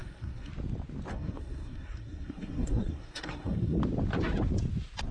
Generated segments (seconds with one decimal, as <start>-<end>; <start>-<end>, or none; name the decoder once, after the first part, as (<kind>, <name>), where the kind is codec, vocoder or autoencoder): 0.0-0.5 (codec, SNAC); 1.1-3.8